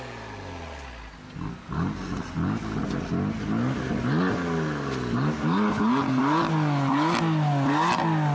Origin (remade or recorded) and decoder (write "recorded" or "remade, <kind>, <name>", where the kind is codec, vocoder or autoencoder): recorded